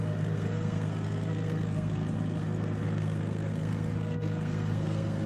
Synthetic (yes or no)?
yes